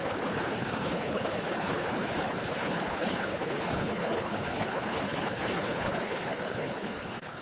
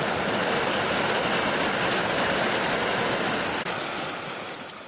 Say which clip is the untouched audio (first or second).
second